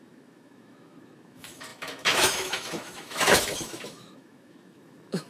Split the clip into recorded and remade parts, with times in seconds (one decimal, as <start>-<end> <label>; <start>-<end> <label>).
0.0-5.3 remade